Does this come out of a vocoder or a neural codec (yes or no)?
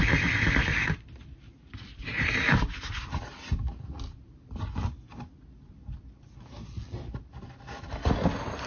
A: no